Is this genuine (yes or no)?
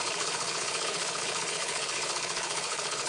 no